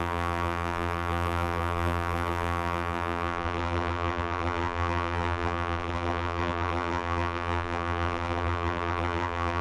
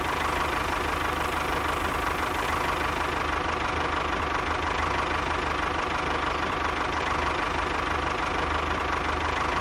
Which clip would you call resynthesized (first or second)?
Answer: first